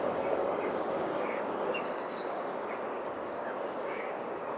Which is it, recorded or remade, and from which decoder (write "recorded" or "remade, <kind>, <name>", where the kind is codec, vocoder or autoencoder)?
remade, codec, DAC